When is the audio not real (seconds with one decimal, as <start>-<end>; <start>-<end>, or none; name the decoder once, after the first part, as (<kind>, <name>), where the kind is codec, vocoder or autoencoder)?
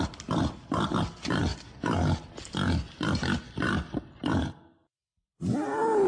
none